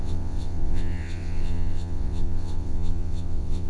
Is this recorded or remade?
remade